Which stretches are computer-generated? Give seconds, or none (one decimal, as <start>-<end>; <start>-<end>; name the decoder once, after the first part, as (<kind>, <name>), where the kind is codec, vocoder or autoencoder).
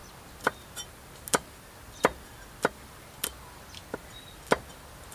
none